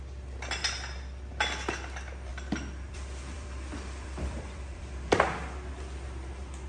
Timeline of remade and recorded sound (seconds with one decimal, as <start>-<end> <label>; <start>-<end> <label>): 0.0-2.3 recorded; 2.3-5.2 remade; 5.2-6.7 recorded